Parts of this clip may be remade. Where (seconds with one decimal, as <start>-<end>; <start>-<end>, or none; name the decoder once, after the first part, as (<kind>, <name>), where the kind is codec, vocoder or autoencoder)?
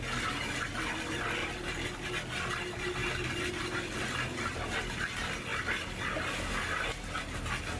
1.4-2.1 (vocoder, BigVGAN v2)